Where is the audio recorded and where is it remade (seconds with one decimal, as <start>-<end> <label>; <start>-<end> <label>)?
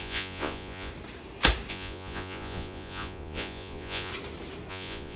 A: 0.0-0.9 remade; 0.9-1.7 recorded; 1.7-4.1 remade; 4.1-4.7 recorded; 4.7-5.2 remade